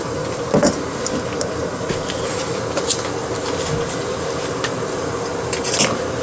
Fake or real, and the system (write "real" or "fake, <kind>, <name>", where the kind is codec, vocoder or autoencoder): real